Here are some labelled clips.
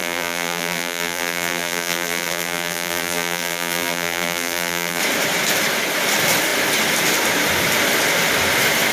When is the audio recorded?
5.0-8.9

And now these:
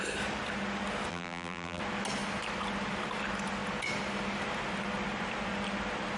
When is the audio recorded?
0.0-1.1; 1.8-6.2